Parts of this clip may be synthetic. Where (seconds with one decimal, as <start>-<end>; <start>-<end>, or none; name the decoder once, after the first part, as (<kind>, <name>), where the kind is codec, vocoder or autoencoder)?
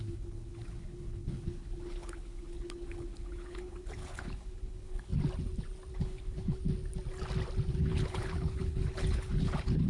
0.0-5.1 (codec, HILCodec); 5.9-6.6; 7.8-9.9